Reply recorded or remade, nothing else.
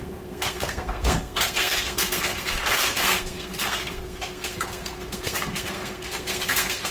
remade